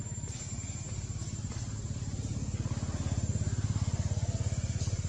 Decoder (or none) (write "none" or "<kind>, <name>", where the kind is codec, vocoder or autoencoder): none